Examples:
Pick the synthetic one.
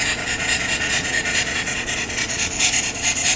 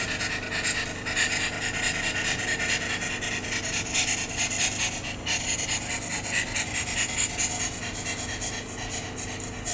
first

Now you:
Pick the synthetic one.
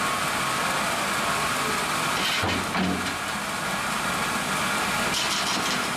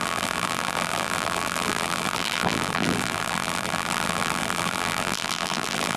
second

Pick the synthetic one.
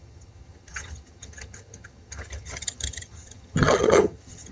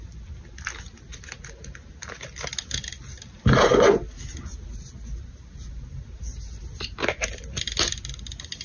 first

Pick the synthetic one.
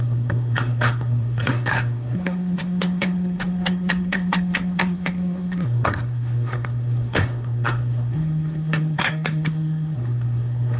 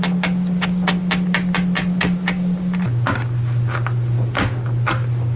first